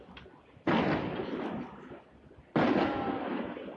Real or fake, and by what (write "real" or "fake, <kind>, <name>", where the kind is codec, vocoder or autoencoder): real